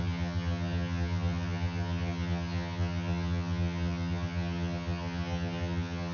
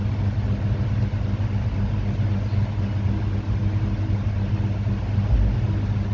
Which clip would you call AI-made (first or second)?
first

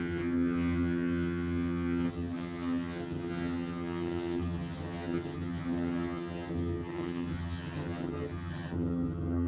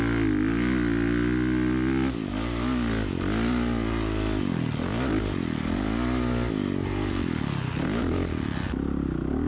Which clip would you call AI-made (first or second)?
first